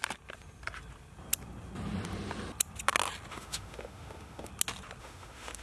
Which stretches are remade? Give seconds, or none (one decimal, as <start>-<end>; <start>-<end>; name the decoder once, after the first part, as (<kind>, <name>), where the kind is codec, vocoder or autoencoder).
3.3-4.5 (autoencoder, DAC-VAE); 5.0-5.6